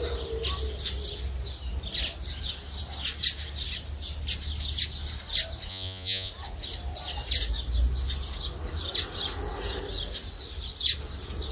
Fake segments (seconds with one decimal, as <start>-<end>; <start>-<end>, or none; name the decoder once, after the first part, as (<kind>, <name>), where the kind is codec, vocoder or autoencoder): 5.7-6.3 (vocoder, Vocos)